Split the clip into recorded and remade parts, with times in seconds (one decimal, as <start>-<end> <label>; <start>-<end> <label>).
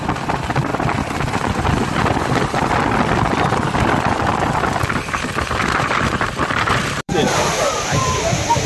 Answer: 0.0-0.7 remade; 0.7-5.8 recorded; 5.8-8.7 remade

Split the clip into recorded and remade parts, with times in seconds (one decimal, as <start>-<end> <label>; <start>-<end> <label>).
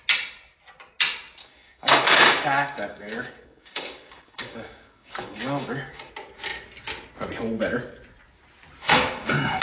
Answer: 0.0-1.4 recorded; 1.4-6.1 remade; 6.1-8.8 recorded; 8.8-9.6 remade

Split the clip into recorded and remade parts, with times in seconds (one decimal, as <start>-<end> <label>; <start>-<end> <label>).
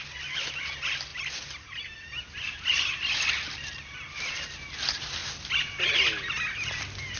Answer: 0.0-7.2 recorded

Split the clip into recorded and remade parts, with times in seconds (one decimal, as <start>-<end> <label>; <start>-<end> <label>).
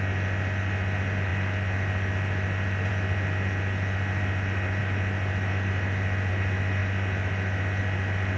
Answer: 0.0-8.4 recorded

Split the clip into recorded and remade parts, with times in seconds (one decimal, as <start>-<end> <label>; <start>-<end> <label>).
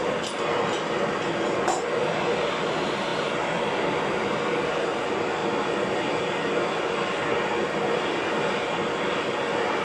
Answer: 0.0-9.8 recorded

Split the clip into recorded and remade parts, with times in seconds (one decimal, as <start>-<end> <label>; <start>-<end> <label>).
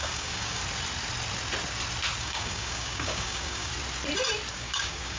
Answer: 0.0-0.6 remade; 0.6-2.2 recorded; 2.2-3.7 remade; 3.7-4.5 recorded; 4.5-5.2 remade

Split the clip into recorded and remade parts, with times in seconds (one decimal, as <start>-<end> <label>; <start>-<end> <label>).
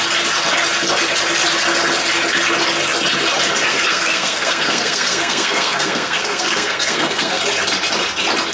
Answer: 0.0-3.7 recorded; 3.7-7.4 remade; 7.4-8.5 recorded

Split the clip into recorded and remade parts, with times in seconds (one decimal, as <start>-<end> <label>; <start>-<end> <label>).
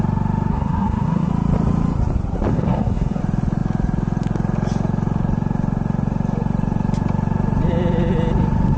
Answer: 0.0-0.5 recorded; 0.5-1.3 remade; 1.3-2.5 recorded; 2.5-3.2 remade; 3.2-8.8 recorded